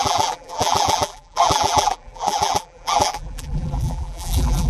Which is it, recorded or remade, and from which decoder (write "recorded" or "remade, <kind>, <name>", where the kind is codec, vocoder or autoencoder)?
remade, vocoder, BigVGAN v2